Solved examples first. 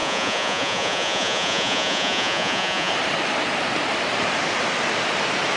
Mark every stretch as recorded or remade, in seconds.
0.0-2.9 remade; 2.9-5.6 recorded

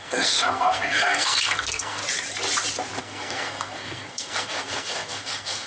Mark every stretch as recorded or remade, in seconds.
0.0-2.0 remade; 2.0-3.0 recorded; 3.0-5.7 remade

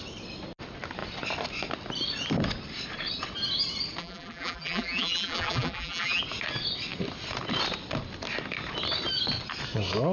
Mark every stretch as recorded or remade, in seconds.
0.0-4.0 recorded; 4.0-6.2 remade; 6.2-10.1 recorded

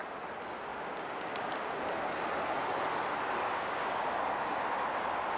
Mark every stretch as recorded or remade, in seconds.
0.0-0.7 recorded; 0.7-1.9 remade; 1.9-3.4 recorded; 3.4-4.1 remade; 4.1-5.4 recorded

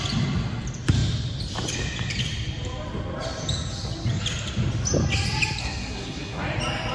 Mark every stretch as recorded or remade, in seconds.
0.0-5.6 recorded; 5.6-6.4 remade; 6.4-6.9 recorded

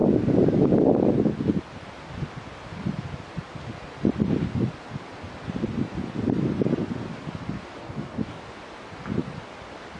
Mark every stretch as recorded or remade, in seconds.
0.0-7.8 recorded; 7.8-8.4 remade; 8.4-10.0 recorded

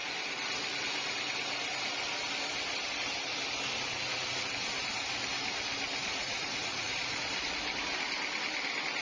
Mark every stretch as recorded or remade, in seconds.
0.0-6.1 recorded; 6.1-6.9 remade; 6.9-9.0 recorded